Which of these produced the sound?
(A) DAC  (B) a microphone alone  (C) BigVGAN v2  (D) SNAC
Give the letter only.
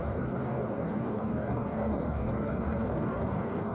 A